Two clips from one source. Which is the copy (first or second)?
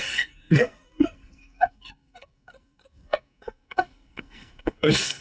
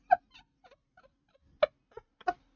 first